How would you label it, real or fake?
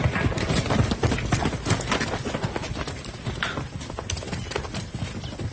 real